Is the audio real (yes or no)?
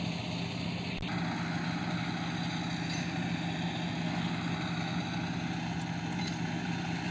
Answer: yes